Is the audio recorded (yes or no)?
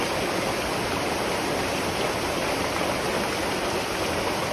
yes